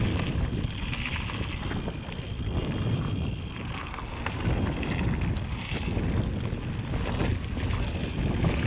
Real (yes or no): yes